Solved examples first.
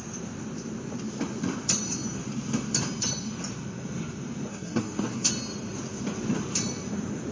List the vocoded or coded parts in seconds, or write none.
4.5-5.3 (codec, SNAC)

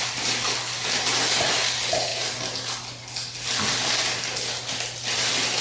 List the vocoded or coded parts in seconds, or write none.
none

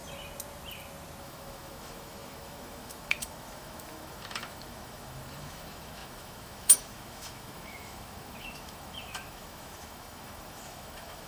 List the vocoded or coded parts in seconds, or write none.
1.2-11.3 (autoencoder, DAC-VAE)

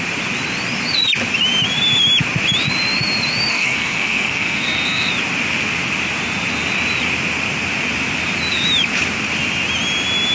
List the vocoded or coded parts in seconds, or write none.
3.5-5.1 (codec, SNAC)

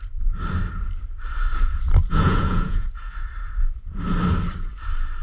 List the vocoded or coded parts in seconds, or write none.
2.0-3.1 (vocoder, Vocos)